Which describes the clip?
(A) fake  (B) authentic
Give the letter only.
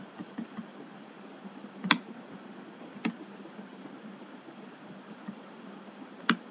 B